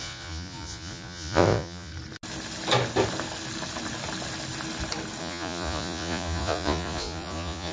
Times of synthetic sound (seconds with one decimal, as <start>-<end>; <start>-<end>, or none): 0.0-1.9; 5.2-7.7